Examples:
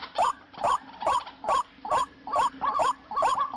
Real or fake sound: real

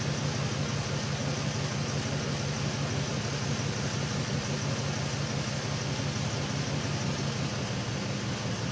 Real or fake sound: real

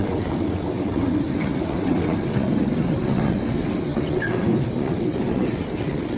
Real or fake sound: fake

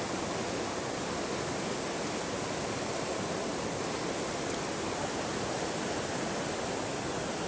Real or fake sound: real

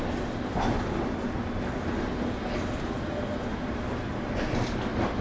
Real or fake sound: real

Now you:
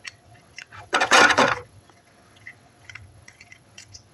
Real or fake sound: fake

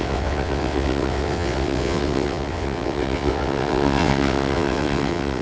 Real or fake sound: fake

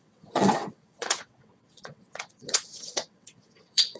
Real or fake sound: fake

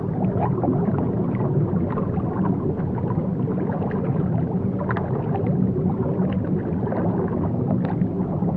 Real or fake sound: real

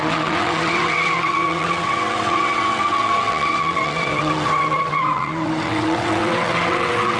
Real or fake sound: fake